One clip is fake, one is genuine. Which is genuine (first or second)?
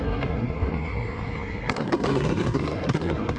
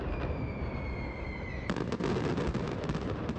second